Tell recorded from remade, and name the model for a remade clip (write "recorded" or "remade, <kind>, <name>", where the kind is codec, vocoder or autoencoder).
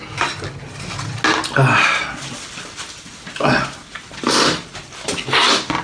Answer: recorded